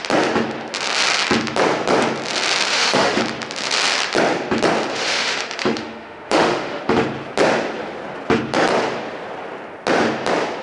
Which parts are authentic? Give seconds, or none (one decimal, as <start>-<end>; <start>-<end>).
0.0-2.7; 3.2-4.9; 6.8-10.6